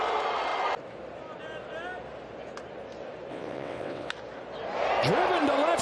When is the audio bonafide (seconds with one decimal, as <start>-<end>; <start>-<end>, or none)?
0.0-3.3; 4.1-5.8